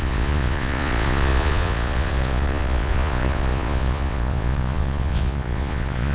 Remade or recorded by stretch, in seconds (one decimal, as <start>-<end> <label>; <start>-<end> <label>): 0.0-6.1 remade